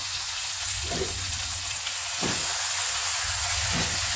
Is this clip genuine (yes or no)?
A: no